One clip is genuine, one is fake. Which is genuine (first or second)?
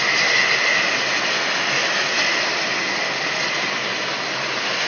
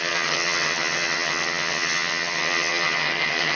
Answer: first